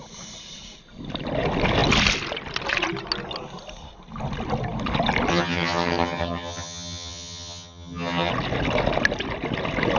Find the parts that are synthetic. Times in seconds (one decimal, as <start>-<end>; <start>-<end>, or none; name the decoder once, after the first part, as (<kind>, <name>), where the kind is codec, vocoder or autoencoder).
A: 5.3-8.3 (vocoder, HiFi-GAN)